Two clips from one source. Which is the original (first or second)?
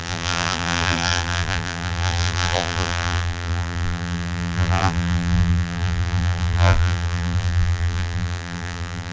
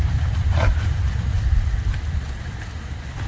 second